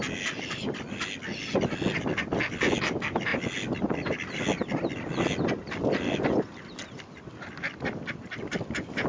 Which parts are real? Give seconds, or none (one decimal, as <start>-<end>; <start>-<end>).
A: 0.0-9.1